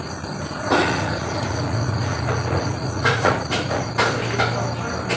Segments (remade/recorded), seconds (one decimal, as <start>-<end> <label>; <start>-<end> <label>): 0.0-0.8 recorded; 0.8-3.9 remade; 3.9-5.2 recorded